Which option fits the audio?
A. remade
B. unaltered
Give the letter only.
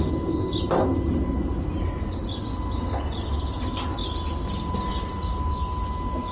B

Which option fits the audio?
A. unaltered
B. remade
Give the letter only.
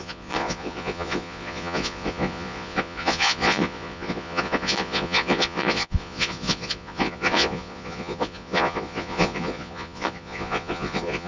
B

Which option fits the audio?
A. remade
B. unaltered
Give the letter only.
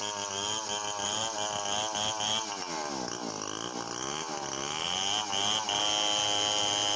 B